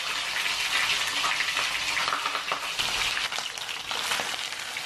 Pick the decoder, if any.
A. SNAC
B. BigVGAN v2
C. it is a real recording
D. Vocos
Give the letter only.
C